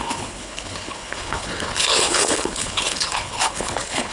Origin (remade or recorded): remade